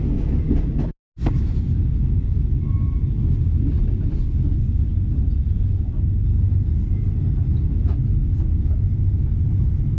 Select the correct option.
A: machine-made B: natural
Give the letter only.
B